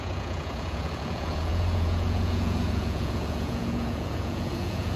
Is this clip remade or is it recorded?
remade